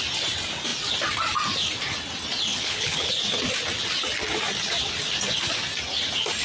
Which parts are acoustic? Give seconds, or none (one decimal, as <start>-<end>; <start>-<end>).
0.0-2.5; 3.1-6.4